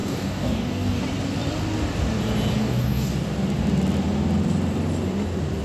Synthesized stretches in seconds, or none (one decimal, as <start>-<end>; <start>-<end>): 0.0-1.0; 2.6-3.1